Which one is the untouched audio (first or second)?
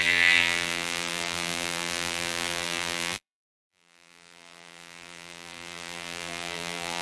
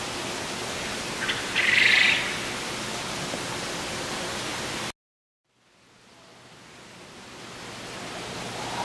second